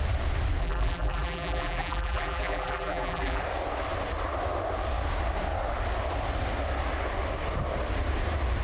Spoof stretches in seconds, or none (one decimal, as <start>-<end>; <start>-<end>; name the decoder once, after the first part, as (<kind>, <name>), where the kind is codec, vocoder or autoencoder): 0.6-3.4 (vocoder, BigVGAN v2)